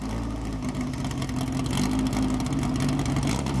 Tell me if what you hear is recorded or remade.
recorded